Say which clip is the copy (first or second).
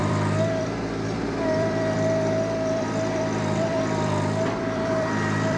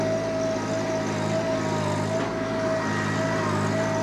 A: first